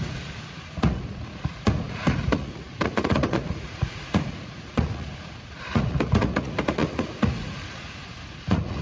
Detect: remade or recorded remade